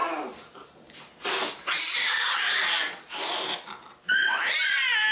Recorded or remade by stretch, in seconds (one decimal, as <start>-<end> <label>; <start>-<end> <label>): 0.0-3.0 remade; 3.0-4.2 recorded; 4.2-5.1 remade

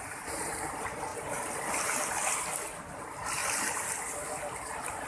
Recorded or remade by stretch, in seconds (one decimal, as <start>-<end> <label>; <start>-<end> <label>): 0.0-1.1 remade; 1.1-2.8 recorded; 2.8-5.1 remade

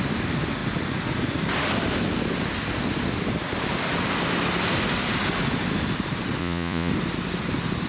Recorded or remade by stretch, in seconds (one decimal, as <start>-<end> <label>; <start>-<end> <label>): 0.0-6.4 recorded; 6.4-6.9 remade; 6.9-7.9 recorded

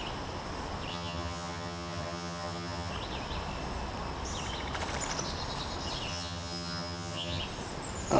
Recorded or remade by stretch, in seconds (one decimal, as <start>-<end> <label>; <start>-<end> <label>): 0.0-0.9 recorded; 0.9-2.9 remade; 2.9-6.1 recorded; 6.1-7.4 remade; 7.4-8.2 recorded